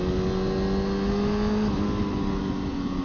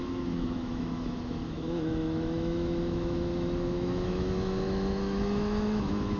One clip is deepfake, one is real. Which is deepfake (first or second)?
second